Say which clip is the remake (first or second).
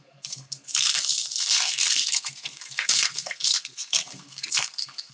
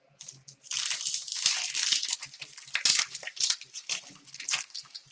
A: first